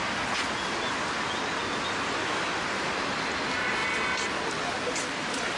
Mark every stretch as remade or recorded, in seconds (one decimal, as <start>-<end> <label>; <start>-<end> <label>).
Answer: 0.0-5.6 recorded